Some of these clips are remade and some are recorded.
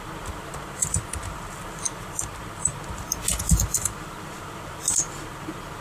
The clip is recorded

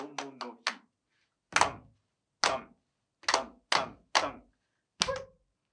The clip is recorded